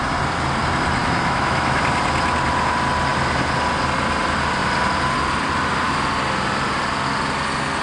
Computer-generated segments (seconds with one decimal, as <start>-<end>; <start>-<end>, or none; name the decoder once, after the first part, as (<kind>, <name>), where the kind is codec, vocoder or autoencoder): 1.0-1.8 (autoencoder, DAC-VAE)